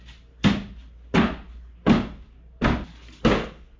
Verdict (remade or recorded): recorded